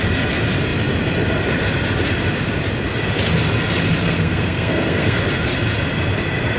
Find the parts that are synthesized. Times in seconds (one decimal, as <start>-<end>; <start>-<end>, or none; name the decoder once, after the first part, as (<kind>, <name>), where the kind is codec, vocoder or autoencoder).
4.0-5.2 (codec, SNAC)